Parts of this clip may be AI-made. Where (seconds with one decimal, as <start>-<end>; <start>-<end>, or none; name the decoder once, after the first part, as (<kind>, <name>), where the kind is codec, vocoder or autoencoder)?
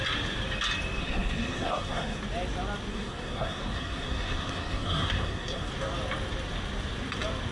1.0-2.2 (codec, SNAC); 2.9-5.7